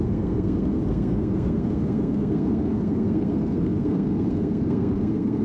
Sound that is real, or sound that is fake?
fake